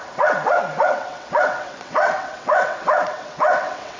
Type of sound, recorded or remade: remade